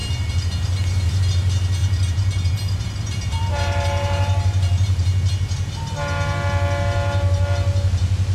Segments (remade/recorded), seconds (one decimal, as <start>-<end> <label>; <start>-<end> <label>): 0.0-1.2 remade; 1.2-1.8 recorded; 1.8-5.7 remade; 5.7-8.3 recorded